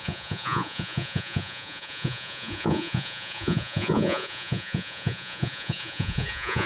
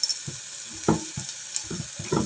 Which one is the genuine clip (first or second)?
second